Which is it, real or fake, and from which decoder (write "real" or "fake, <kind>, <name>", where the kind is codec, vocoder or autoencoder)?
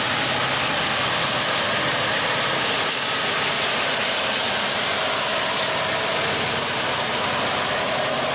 real